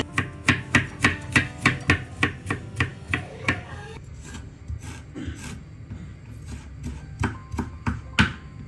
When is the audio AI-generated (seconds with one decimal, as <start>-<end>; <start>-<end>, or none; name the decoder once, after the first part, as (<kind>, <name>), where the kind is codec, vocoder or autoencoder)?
1.1-1.8 (codec, DAC); 2.9-4.6